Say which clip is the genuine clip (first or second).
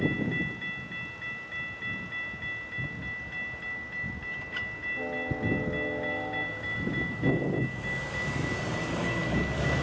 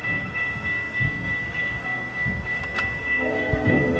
first